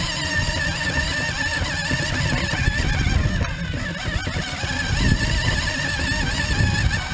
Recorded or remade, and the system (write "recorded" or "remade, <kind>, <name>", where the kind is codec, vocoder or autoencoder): recorded